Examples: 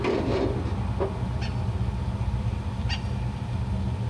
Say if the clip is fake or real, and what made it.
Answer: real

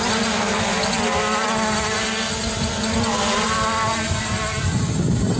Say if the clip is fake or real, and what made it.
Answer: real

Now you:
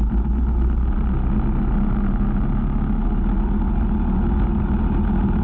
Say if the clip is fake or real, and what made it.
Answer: real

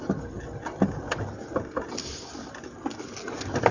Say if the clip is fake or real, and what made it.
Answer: real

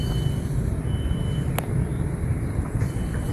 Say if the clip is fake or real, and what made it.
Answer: fake, vocoder, BigVGAN v2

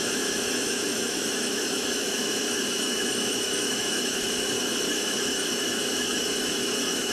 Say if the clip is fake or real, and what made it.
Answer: fake, autoencoder, DAC-VAE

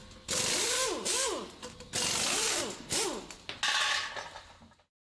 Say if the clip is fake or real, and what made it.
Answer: real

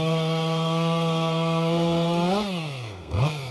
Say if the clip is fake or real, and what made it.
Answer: fake, codec, SNAC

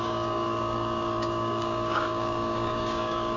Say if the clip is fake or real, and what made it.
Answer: fake, codec, DAC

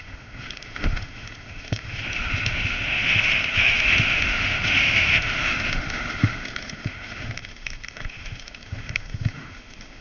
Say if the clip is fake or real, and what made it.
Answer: fake, autoencoder, DAC-VAE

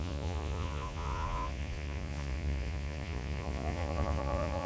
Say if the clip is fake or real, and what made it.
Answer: fake, vocoder, Vocos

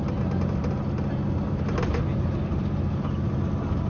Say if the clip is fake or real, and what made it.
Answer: real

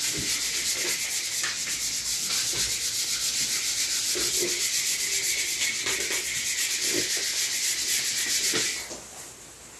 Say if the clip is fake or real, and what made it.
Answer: real